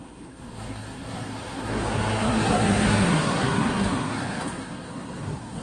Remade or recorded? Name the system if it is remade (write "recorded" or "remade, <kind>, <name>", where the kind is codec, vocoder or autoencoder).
remade, codec, SNAC